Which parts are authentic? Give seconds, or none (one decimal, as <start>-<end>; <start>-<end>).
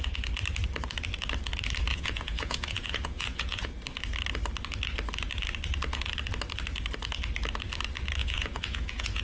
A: 0.0-1.9; 3.7-8.2